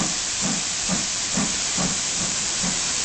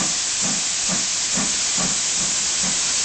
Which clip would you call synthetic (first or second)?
first